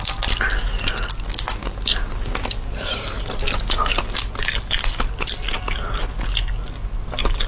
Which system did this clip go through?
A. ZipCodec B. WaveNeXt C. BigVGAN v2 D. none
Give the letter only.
D